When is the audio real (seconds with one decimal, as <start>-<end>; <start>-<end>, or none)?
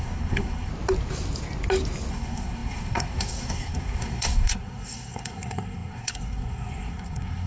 0.7-2.1